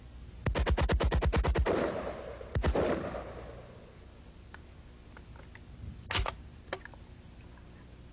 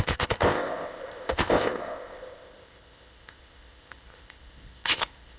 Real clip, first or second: first